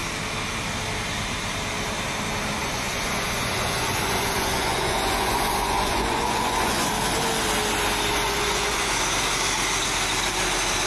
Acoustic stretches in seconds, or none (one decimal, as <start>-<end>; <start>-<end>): 0.0-2.6; 6.9-8.1; 9.0-10.9